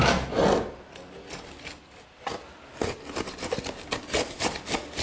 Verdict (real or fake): real